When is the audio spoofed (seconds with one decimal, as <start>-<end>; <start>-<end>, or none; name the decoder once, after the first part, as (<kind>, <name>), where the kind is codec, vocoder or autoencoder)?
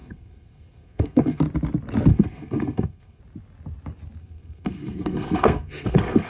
0.0-1.4 (codec, SNAC); 2.1-3.2; 4.2-6.3